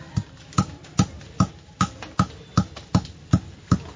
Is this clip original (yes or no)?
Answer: yes